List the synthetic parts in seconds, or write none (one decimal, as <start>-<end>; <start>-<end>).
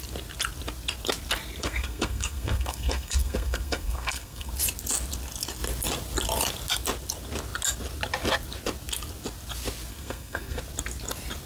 1.6-4.5; 9.9-10.6